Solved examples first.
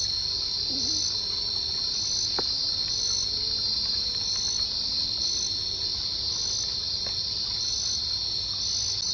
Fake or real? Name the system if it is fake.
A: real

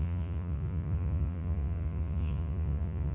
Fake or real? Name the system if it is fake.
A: fake, vocoder, Vocos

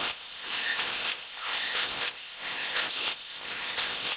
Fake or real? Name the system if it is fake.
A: fake, codec, ZipCodec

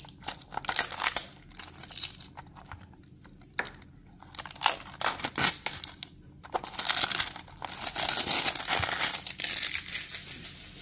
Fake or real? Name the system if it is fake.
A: real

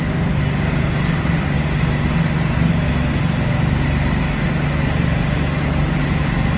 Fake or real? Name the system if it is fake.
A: real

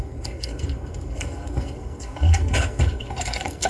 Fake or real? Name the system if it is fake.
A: fake, codec, SNAC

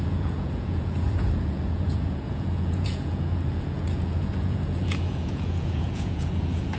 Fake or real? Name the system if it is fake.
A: fake, vocoder, Vocos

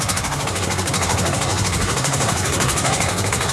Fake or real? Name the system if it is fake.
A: fake, codec, SNAC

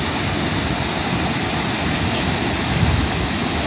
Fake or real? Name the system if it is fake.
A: real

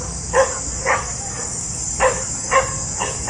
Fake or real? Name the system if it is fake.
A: fake, codec, DAC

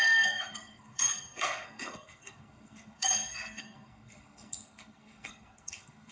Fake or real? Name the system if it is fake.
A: fake, codec, SNAC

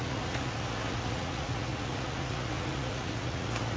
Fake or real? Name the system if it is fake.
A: fake, vocoder, Vocos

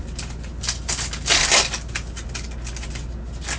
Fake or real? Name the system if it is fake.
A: real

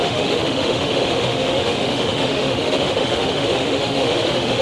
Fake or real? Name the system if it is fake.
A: fake, autoencoder, DAC-VAE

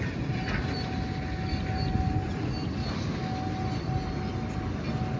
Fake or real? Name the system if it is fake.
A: real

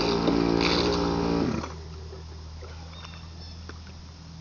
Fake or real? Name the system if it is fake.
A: real